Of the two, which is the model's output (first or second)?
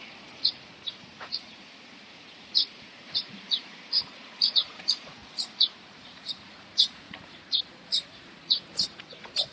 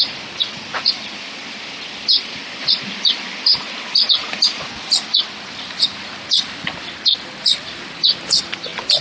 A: first